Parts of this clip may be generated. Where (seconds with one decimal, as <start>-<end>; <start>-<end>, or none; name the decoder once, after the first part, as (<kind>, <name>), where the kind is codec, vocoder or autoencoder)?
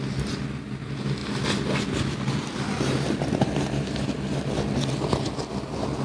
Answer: none